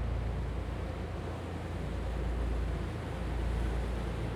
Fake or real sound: real